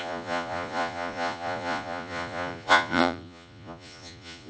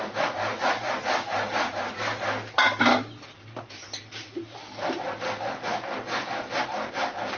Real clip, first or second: second